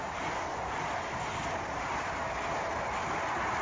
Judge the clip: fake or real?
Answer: real